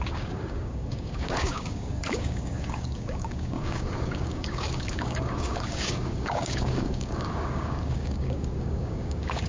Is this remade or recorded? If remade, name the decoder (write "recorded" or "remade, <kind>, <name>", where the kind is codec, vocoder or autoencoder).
remade, codec, DAC